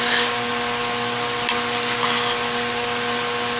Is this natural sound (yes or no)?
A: yes